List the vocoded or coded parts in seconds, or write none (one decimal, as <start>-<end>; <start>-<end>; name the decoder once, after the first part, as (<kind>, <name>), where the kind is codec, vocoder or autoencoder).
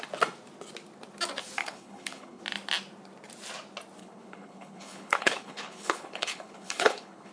1.6-2.4 (codec, HILCodec); 4.0-7.3